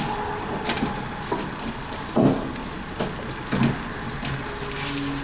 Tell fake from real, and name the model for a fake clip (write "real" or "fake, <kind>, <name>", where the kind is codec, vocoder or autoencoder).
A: real